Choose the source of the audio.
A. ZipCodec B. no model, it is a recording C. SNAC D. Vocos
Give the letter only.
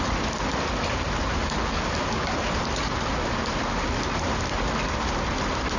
B